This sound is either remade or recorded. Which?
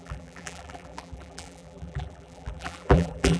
remade